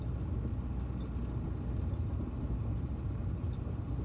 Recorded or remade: recorded